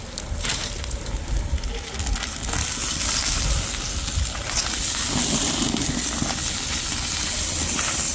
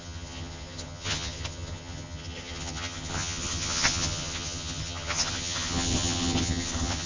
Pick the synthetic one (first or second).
second